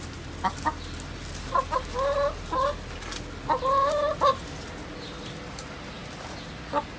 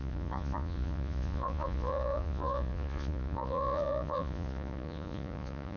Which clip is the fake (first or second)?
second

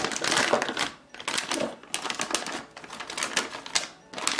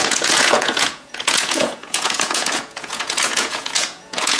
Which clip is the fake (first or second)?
second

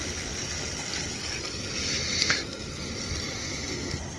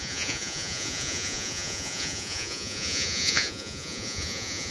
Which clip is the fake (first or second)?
second